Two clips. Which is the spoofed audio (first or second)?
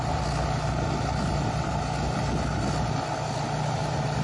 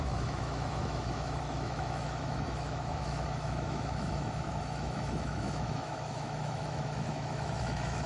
second